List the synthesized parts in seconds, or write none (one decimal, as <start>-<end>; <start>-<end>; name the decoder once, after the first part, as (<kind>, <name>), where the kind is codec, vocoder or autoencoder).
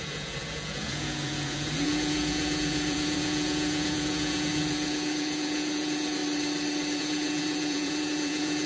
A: 0.0-6.2 (vocoder, Vocos); 7.0-8.7